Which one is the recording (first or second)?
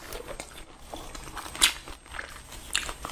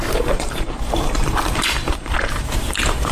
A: first